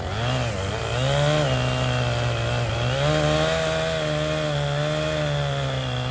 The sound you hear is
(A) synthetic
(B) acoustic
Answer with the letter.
B